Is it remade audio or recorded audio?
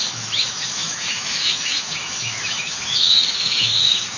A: remade